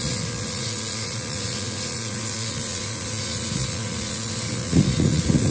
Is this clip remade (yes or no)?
yes